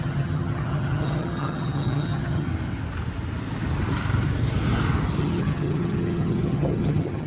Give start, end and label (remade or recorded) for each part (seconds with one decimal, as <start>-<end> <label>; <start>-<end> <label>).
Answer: 0.0-2.5 remade; 2.5-5.2 recorded; 5.2-7.3 remade